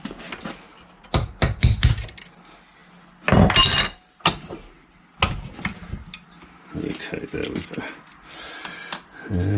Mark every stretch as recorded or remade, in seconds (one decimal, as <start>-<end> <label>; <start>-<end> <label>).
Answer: 0.0-9.6 recorded